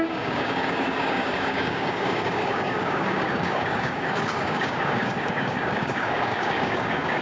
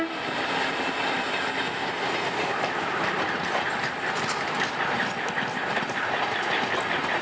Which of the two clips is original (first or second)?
second